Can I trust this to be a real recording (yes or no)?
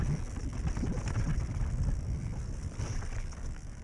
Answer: yes